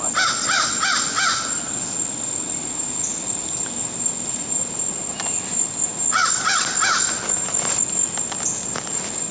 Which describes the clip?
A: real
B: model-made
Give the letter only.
A